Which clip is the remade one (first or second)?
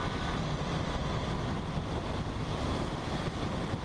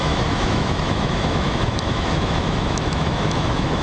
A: second